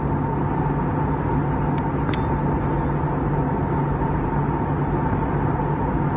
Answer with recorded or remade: recorded